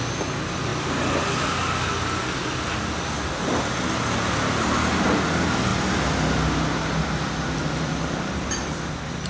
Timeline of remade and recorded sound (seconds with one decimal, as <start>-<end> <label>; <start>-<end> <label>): 0.0-9.3 recorded